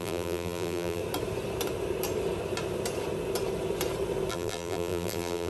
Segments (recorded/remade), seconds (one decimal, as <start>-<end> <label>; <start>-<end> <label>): 0.0-1.0 remade; 1.0-4.3 recorded; 4.3-5.5 remade